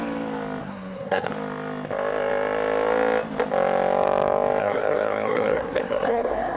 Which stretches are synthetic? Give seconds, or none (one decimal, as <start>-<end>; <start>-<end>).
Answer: 0.6-1.3; 4.6-6.6